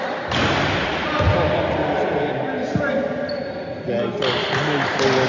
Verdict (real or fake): real